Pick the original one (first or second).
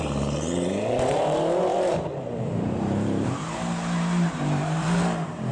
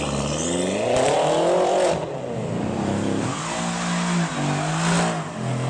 second